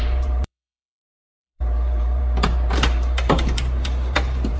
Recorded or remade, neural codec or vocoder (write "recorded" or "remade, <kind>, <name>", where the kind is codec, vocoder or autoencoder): remade, vocoder, BigVGAN v2